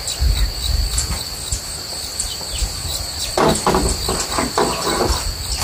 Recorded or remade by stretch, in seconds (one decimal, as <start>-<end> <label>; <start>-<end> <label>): 0.0-1.5 recorded; 1.5-2.1 remade; 2.1-2.6 recorded; 2.6-3.3 remade; 3.3-5.6 recorded